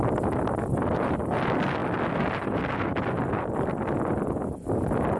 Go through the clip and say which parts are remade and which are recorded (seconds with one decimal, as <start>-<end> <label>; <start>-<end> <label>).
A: 0.0-5.2 recorded